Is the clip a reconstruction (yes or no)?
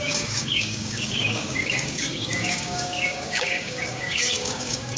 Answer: yes